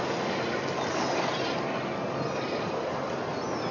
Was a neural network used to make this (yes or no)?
no